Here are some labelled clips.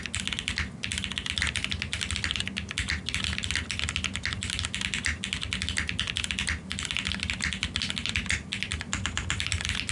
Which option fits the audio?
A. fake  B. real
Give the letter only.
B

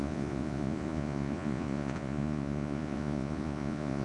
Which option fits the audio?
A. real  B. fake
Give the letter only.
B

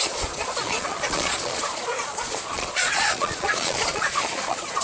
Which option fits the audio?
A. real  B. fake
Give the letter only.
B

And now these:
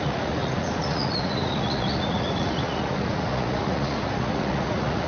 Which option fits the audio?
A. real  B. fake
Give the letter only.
B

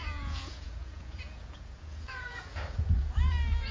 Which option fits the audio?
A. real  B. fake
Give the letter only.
B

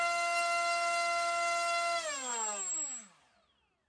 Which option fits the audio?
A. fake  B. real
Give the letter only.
B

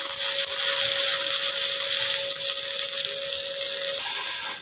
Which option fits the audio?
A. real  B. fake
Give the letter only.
A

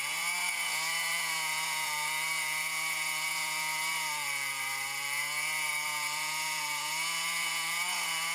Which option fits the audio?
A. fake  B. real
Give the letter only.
A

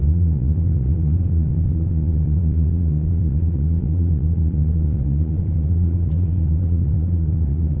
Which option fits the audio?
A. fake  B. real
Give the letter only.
A